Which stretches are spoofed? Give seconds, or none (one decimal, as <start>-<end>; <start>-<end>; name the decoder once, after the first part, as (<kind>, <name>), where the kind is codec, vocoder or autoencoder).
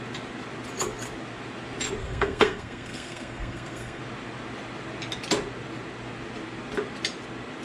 2.0-4.0 (codec, SNAC)